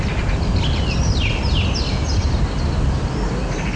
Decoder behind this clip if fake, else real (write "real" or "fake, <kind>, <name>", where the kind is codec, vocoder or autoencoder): real